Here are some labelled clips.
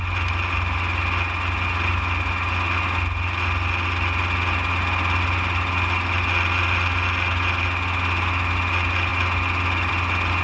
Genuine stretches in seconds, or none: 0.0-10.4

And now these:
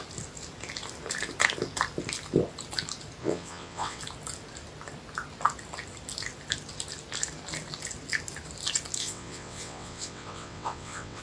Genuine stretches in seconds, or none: 0.0-3.2; 4.0-9.0

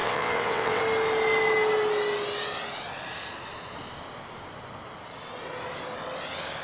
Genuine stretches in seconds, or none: 0.8-6.6

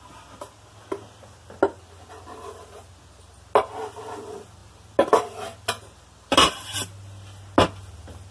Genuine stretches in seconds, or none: 0.0-8.3